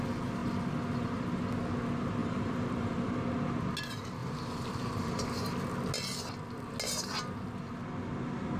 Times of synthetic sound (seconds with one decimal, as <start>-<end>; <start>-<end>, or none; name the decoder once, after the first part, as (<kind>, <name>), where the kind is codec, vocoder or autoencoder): 2.2-3.2 (vocoder, BigVGAN v2); 4.2-5.2